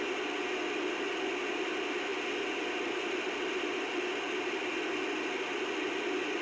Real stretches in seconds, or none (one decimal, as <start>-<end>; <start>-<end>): 0.0-6.4